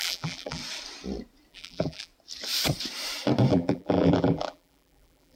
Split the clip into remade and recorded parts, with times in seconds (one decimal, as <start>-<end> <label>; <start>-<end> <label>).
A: 0.0-0.6 remade; 0.6-1.5 recorded; 1.5-2.1 remade; 2.1-3.5 recorded; 3.5-5.4 remade

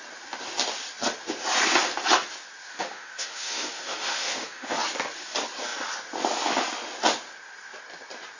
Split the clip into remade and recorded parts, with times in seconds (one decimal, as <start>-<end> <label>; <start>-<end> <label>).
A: 0.0-2.7 recorded; 2.7-4.8 remade; 4.8-8.4 recorded

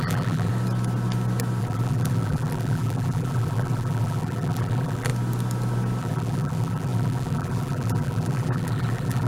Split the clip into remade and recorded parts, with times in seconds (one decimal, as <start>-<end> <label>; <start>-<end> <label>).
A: 0.0-0.5 remade; 0.5-1.6 recorded; 1.6-5.1 remade; 5.1-6.0 recorded; 6.0-9.3 remade

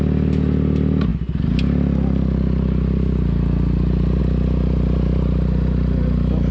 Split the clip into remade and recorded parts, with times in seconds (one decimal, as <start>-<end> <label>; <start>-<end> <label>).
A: 0.0-6.5 recorded

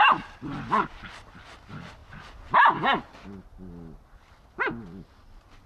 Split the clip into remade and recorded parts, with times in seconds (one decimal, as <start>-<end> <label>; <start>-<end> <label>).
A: 0.0-5.7 recorded

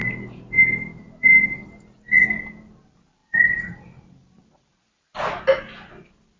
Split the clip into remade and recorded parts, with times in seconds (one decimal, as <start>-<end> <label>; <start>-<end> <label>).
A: 0.0-3.2 recorded; 3.2-5.0 remade; 5.0-6.4 recorded